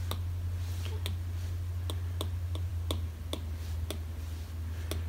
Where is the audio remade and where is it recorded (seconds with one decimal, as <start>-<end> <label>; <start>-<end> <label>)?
0.0-5.1 recorded

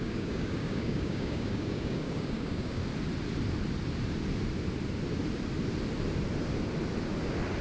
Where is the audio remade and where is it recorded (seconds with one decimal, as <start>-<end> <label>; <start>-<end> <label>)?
0.0-2.8 remade; 2.8-7.6 recorded

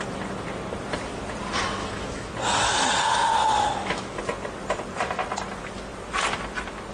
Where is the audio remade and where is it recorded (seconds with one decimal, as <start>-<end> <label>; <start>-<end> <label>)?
0.0-1.8 recorded; 1.8-2.3 remade; 2.3-3.4 recorded; 3.4-4.2 remade; 4.2-6.9 recorded

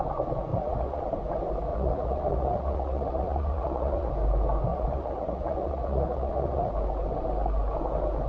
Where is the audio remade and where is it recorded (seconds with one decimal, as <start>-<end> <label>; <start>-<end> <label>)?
0.0-0.5 recorded; 0.5-1.0 remade; 1.0-1.7 recorded; 1.7-4.1 remade; 4.1-4.7 recorded; 4.7-6.7 remade; 6.7-8.3 recorded

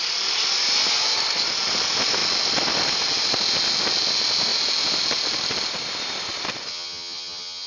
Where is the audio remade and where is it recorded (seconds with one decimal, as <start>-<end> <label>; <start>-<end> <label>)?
0.0-6.7 recorded; 6.7-7.7 remade